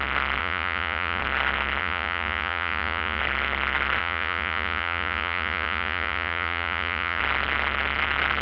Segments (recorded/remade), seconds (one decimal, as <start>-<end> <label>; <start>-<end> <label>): 0.0-0.4 recorded; 0.4-1.2 remade; 1.2-1.8 recorded; 1.8-3.2 remade; 3.2-4.0 recorded; 4.0-7.2 remade; 7.2-8.4 recorded